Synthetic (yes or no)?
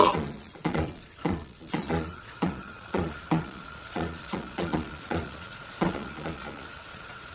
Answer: yes